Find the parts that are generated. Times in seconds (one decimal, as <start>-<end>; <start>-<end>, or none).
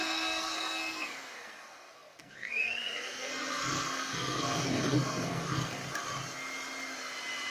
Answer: 0.0-5.8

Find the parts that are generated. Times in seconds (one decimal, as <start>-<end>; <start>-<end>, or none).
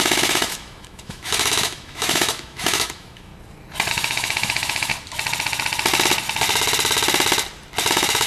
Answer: 0.0-3.3; 3.9-4.9; 7.9-8.3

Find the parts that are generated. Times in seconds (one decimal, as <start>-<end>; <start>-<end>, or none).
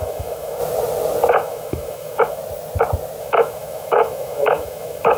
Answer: 0.0-0.6; 1.3-2.4; 3.2-5.2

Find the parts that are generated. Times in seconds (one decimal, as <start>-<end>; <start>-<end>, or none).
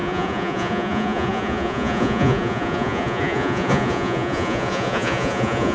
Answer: 0.0-5.7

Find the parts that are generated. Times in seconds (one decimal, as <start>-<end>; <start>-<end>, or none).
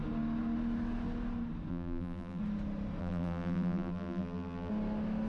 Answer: 1.7-2.4; 3.0-4.7